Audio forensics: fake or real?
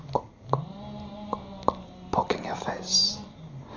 real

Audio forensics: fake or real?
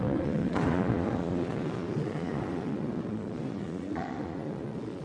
fake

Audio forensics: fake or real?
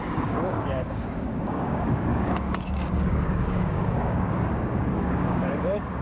fake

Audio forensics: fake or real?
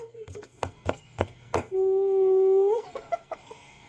fake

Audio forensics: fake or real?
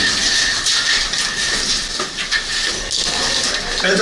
real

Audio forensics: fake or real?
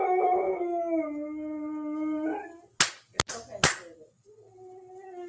real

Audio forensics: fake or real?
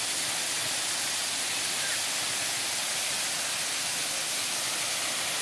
real